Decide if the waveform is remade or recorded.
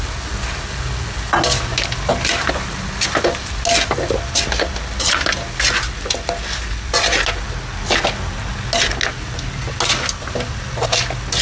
recorded